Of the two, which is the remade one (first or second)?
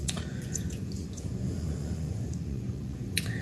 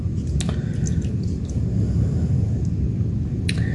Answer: first